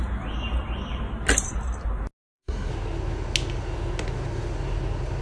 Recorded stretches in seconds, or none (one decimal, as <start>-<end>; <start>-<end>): 0.0-2.2; 2.7-5.2